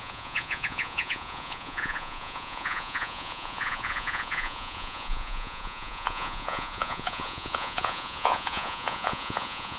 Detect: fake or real fake